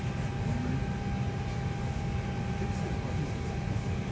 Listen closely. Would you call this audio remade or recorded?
recorded